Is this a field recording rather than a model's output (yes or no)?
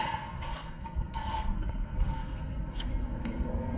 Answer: no